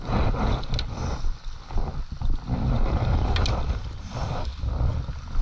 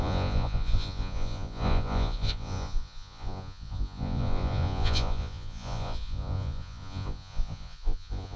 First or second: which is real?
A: first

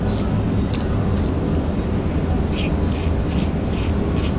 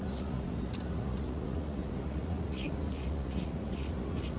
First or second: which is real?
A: first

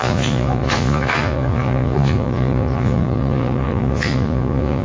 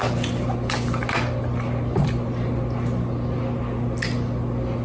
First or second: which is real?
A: second